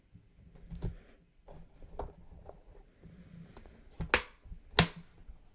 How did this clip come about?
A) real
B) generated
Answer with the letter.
A